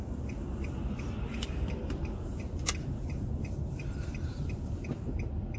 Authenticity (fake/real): fake